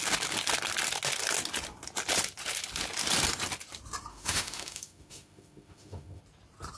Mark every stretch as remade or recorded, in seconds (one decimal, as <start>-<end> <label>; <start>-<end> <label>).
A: 0.0-4.1 recorded; 4.1-6.2 remade; 6.2-6.8 recorded